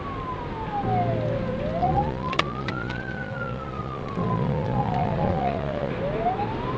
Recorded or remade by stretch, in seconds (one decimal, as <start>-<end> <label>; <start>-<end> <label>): 0.0-1.8 recorded; 1.8-5.9 remade; 5.9-6.8 recorded